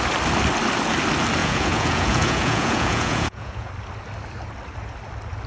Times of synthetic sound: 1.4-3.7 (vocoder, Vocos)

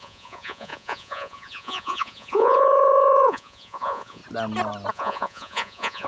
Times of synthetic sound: 0.0-4.2 (vocoder, Vocos); 4.9-6.1

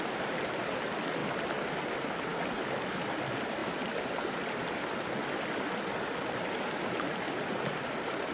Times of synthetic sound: none

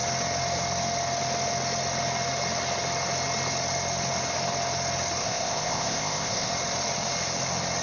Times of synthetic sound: 5.2-6.5 (codec, ZipCodec)

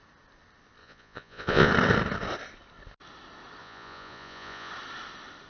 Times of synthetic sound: 0.8-1.7 (vocoder, Vocos); 3.6-4.7

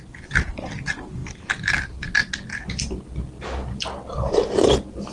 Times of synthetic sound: none